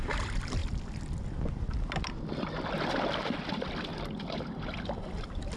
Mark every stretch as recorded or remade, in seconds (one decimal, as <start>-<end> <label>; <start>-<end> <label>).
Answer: 0.0-5.6 recorded